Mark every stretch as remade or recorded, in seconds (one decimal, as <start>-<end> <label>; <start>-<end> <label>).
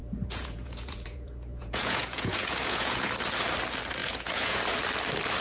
0.0-3.1 remade; 3.1-4.0 recorded; 4.0-4.6 remade; 4.6-5.4 recorded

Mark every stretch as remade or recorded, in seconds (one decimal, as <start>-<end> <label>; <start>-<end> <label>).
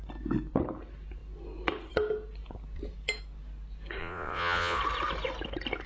0.0-4.0 recorded; 4.0-4.8 remade; 4.8-5.9 recorded